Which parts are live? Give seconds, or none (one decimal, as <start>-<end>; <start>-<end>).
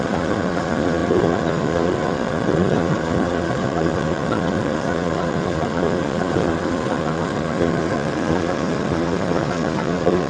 none